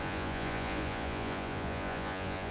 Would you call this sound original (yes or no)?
no